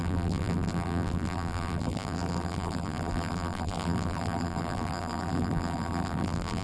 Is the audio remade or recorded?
remade